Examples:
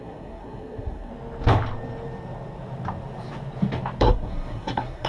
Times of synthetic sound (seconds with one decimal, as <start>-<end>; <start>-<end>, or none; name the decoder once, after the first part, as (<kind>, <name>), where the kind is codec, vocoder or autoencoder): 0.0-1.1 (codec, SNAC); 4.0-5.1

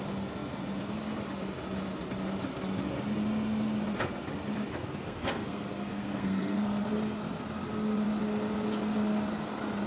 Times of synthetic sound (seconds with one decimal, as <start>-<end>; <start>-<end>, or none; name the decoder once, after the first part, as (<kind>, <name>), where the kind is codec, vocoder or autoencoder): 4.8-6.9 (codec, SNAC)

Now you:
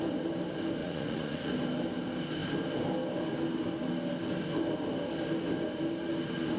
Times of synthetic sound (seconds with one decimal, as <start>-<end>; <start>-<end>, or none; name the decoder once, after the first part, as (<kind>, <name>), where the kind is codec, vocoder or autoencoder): 0.8-1.5 (vocoder, Vocos)

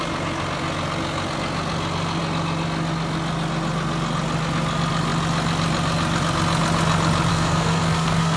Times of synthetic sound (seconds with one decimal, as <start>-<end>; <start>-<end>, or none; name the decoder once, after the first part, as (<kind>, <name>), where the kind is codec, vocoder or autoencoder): 7.3-8.4 (codec, SNAC)

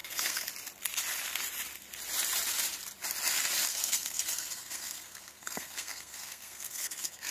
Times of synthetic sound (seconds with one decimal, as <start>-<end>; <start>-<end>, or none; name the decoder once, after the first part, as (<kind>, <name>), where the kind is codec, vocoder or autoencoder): 0.0-0.5 (codec, SNAC); 3.7-7.3